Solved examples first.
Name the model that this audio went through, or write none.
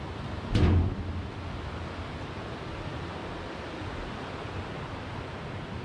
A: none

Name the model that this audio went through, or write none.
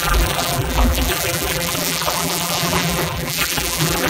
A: vocoder, BigVGAN v2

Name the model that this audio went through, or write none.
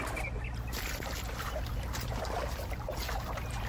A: none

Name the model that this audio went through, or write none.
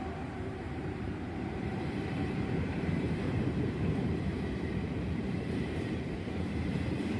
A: vocoder, BigVGAN v2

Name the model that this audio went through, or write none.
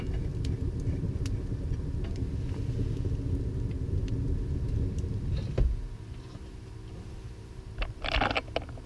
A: none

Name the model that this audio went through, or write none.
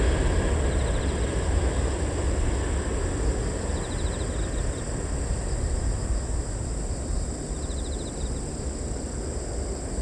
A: none